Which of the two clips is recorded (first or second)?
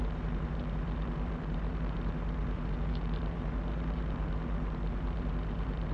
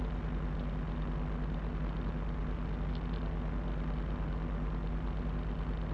second